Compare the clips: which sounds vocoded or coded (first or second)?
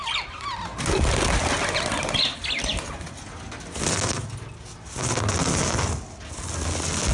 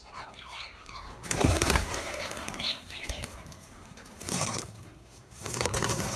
second